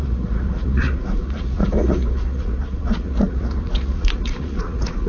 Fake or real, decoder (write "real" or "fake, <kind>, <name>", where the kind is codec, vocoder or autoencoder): fake, vocoder, Vocos